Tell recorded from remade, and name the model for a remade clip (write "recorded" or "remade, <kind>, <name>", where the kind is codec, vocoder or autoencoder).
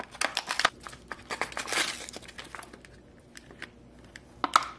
recorded